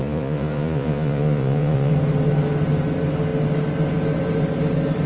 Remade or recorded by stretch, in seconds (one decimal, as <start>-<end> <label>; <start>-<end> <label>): 0.0-1.9 remade; 1.9-5.1 recorded